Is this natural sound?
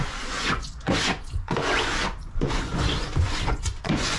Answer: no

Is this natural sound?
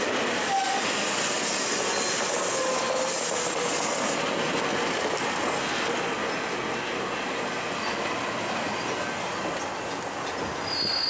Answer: yes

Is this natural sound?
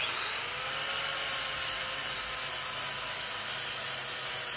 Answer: yes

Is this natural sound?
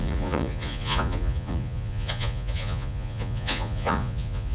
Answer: no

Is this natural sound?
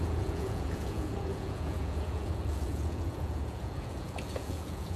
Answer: no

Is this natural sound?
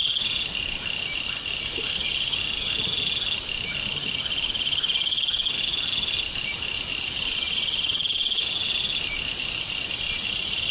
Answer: yes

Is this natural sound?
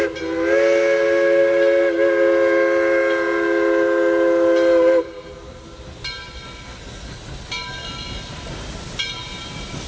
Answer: yes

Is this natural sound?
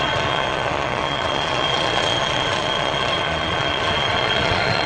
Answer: no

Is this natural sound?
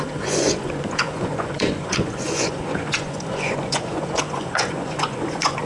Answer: no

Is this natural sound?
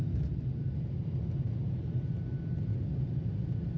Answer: yes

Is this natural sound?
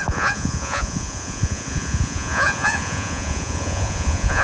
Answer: no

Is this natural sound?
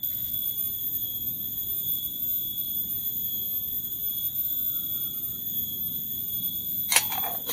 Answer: yes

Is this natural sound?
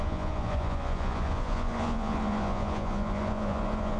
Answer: no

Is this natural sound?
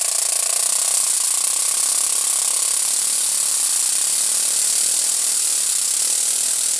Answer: yes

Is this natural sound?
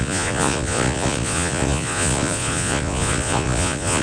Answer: no